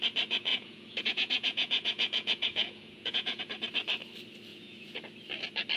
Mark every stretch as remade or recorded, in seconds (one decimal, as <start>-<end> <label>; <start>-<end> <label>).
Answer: 0.0-0.5 recorded; 0.5-3.4 remade; 3.4-4.5 recorded; 4.5-5.0 remade; 5.0-5.8 recorded